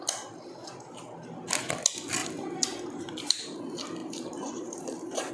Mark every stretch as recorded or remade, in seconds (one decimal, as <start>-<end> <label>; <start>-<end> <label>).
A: 0.0-2.2 recorded; 2.2-3.6 remade; 3.6-4.0 recorded; 4.0-5.3 remade